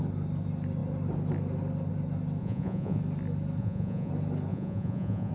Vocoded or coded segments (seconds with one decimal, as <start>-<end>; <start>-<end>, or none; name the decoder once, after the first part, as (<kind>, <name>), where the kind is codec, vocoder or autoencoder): 2.4-3.0 (vocoder, Vocos); 3.6-4.1; 4.5-5.3